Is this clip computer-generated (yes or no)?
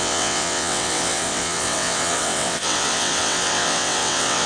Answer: yes